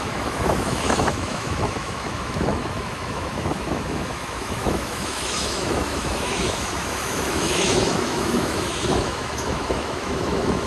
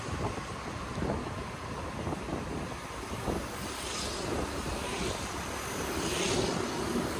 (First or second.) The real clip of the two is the second